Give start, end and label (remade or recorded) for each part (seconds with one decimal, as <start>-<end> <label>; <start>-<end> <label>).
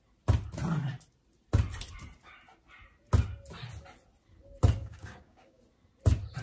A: 0.0-4.8 recorded; 4.8-5.6 remade; 5.6-6.4 recorded